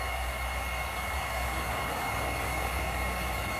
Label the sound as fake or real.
fake